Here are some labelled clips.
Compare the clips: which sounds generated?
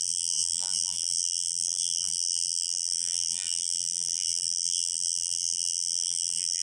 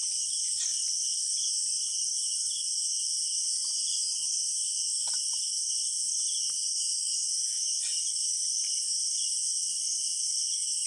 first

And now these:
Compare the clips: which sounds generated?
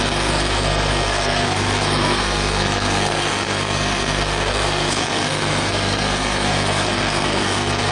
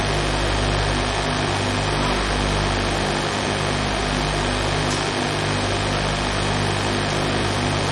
first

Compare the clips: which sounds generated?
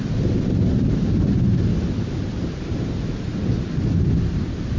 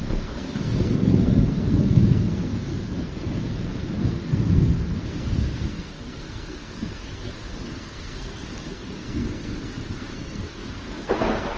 second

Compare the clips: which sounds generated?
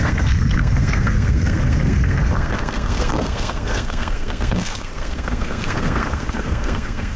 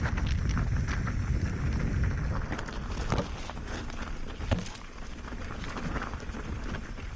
first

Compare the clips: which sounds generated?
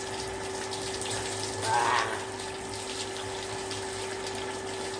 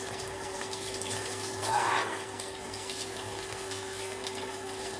second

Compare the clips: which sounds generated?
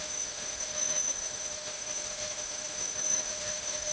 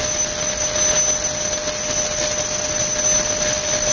first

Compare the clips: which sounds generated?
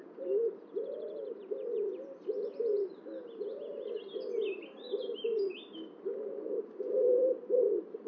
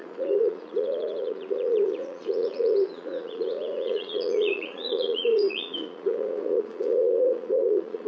second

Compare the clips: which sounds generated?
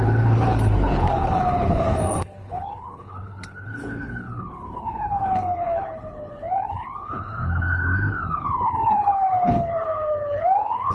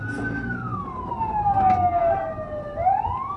first